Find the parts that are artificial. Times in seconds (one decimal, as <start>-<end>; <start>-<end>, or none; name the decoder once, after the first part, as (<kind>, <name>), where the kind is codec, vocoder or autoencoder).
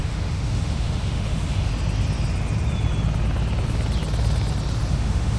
0.0-1.7 (autoencoder, DAC-VAE); 4.9-5.4